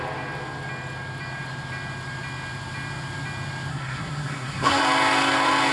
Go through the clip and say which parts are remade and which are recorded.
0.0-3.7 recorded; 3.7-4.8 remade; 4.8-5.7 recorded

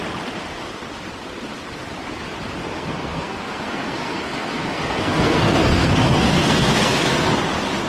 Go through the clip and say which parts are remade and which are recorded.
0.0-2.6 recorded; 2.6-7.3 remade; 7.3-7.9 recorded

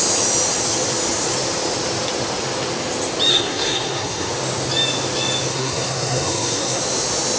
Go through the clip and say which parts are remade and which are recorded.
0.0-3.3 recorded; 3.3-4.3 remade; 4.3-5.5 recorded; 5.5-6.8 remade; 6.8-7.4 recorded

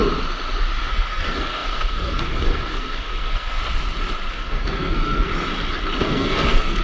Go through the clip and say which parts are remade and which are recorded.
0.0-0.9 recorded; 0.9-3.6 remade; 3.6-4.3 recorded; 4.3-5.3 remade; 5.3-6.0 recorded; 6.0-6.8 remade

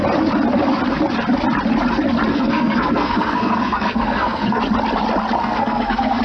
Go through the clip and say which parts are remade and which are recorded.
0.0-2.3 recorded; 2.3-4.6 remade; 4.6-5.4 recorded; 5.4-6.2 remade